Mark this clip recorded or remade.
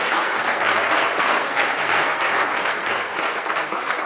remade